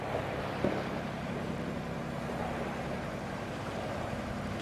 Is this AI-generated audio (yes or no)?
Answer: no